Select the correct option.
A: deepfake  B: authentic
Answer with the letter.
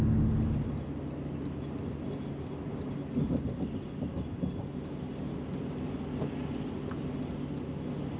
B